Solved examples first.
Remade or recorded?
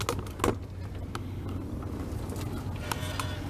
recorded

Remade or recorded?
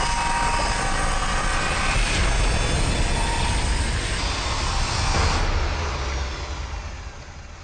recorded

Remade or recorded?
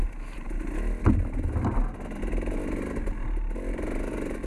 recorded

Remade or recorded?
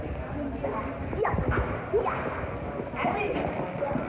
recorded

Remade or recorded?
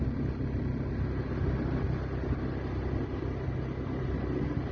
recorded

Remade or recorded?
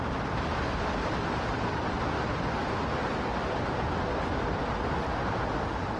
recorded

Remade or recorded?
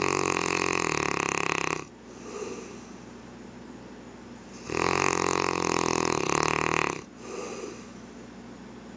recorded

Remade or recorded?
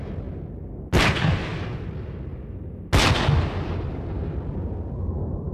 recorded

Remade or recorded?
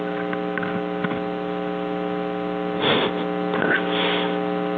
recorded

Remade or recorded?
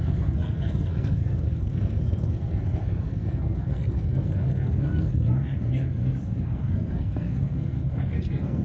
remade